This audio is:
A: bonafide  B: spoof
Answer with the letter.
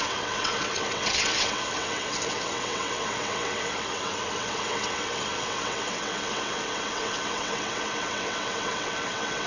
B